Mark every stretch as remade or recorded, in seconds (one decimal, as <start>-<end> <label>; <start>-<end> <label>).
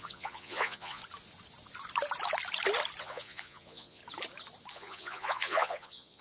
0.0-1.0 remade; 1.0-3.0 recorded; 3.0-4.0 remade; 4.0-4.7 recorded; 4.7-6.2 remade